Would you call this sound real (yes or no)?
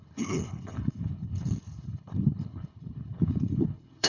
no